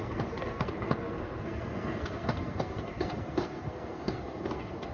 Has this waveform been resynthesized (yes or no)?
yes